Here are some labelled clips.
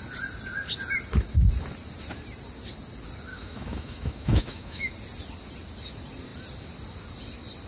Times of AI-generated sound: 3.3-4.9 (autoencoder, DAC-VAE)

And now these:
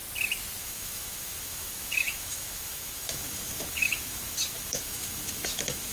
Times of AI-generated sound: 0.6-5.9 (autoencoder, DAC-VAE)

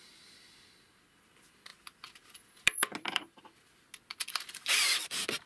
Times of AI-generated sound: none

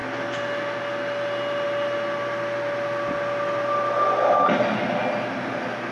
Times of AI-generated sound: none

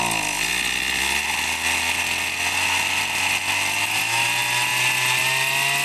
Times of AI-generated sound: none

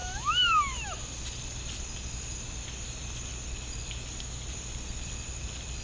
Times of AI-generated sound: 0.0-1.0 (autoencoder, DAC-VAE)

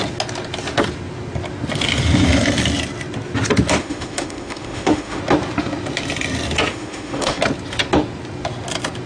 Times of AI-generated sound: 3.8-5.2 (autoencoder, DAC-VAE); 6.7-7.4